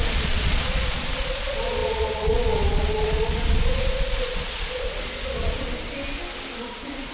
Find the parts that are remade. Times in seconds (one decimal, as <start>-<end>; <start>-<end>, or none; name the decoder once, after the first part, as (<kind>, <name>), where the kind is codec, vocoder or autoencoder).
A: 0.0-5.7 (vocoder, Vocos); 6.6-7.1